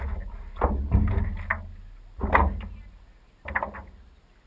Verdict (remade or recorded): recorded